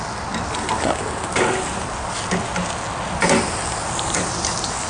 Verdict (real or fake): real